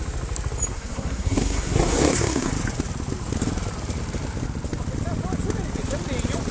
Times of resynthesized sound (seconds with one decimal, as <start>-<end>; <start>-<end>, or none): 0.7-2.5